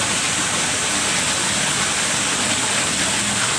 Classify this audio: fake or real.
fake